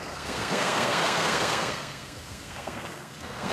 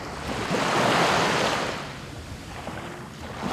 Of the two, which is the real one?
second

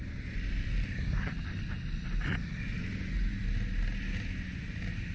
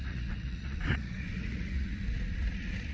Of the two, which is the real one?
first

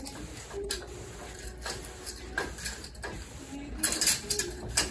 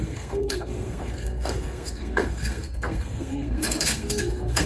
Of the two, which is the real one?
first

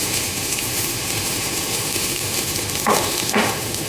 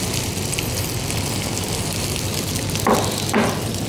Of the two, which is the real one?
second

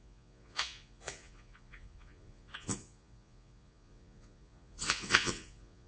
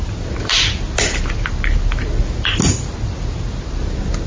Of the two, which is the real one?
second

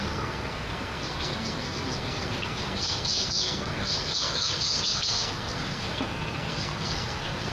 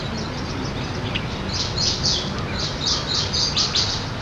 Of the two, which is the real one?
second